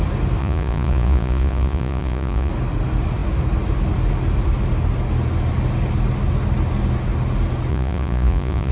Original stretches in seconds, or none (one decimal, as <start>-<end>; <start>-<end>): 0.0-0.4; 2.5-7.7